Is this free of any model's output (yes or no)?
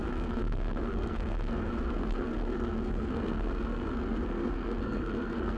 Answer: no